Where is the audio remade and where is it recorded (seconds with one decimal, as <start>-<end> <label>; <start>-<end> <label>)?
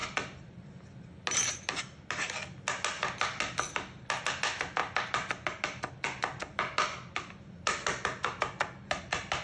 0.0-9.4 recorded